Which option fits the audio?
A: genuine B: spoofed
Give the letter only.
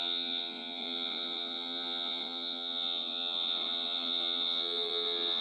B